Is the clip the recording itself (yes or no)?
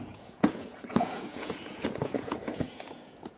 no